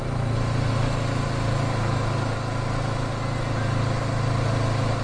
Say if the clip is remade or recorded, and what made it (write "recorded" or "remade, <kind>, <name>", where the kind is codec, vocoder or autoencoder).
recorded